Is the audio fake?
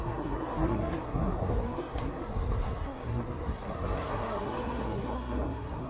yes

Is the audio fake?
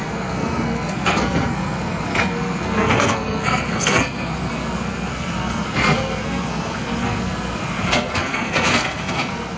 yes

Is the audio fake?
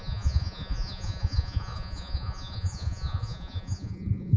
yes